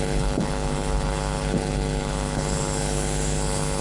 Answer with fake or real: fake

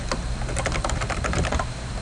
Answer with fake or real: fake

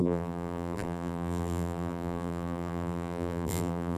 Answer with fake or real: fake